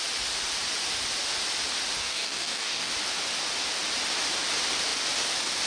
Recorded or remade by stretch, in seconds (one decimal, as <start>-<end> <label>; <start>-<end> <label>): 0.0-2.0 recorded; 2.0-2.9 remade; 2.9-5.7 recorded